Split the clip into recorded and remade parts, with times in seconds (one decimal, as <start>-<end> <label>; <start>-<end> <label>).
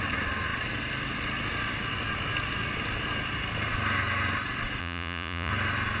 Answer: 0.0-4.8 recorded; 4.8-5.5 remade; 5.5-6.0 recorded